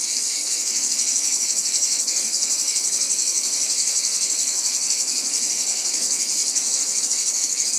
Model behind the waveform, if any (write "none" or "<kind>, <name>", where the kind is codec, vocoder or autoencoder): codec, SNAC